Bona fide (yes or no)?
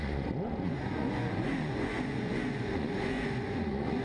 no